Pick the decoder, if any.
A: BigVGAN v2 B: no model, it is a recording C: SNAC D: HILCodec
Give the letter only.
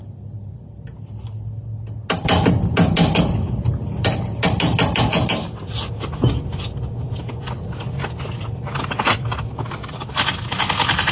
B